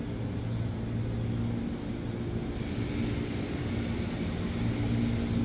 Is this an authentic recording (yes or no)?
yes